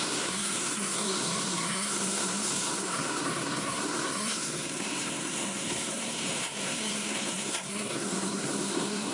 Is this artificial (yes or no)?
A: yes